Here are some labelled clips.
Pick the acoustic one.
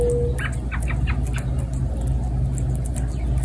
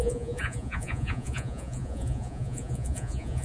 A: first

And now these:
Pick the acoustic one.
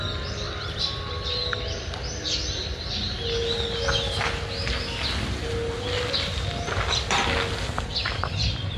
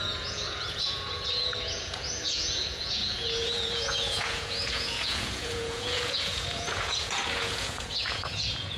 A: first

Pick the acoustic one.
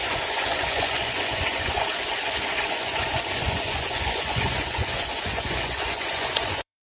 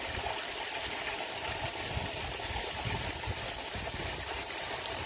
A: second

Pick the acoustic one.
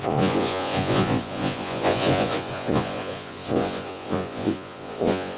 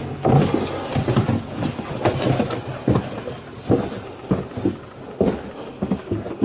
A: second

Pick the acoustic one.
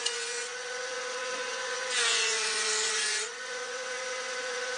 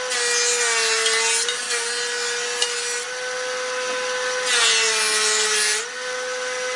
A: second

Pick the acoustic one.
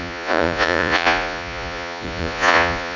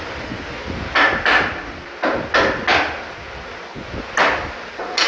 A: second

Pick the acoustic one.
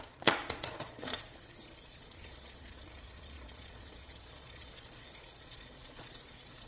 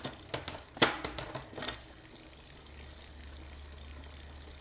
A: second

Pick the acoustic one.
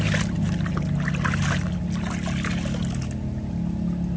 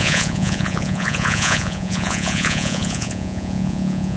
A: first